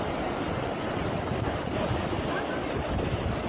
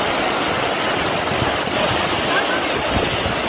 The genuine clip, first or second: second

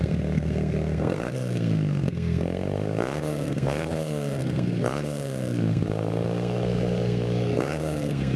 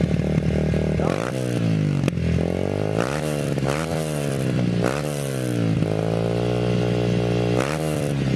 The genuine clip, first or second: second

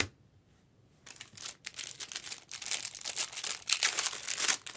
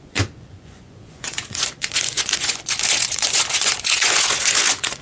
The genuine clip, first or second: first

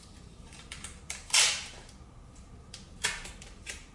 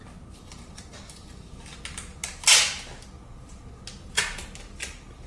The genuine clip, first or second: second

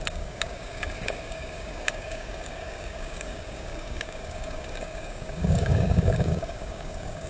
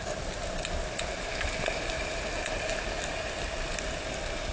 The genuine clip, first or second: second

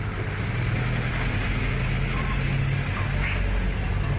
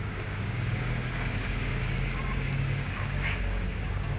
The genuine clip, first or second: first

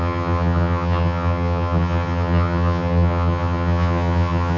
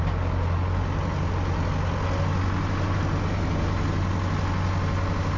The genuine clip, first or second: second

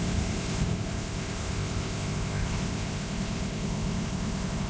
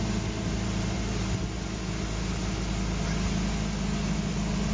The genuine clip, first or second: second